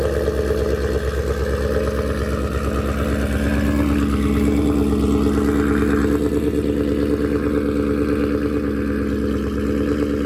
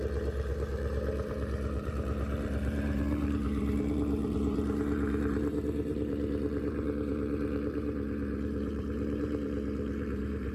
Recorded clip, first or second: first